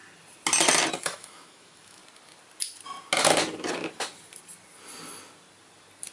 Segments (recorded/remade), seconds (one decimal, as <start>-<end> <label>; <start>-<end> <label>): 0.0-0.9 recorded; 0.9-2.0 remade; 2.0-6.1 recorded